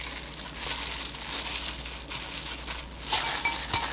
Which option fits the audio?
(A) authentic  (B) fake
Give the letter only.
A